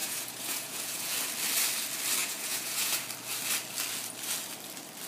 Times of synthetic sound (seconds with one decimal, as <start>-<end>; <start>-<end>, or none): 0.0-1.2; 2.2-3.0